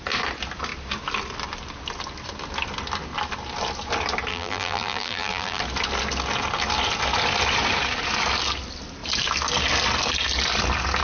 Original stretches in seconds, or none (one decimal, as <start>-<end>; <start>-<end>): 0.0-4.3; 5.6-11.0